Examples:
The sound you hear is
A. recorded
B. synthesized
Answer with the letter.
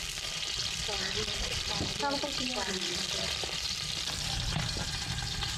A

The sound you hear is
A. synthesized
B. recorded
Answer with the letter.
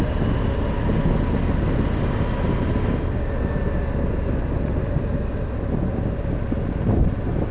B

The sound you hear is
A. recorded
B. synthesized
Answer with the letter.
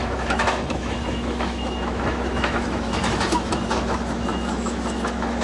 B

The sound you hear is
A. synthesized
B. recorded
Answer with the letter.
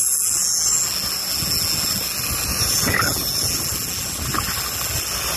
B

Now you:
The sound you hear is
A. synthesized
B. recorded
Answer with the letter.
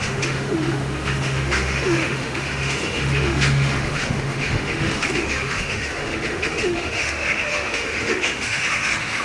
A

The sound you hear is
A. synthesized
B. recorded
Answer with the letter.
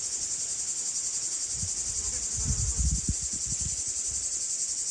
B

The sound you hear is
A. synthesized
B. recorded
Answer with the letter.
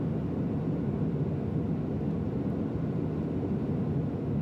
B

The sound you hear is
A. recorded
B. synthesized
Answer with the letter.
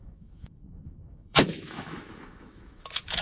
B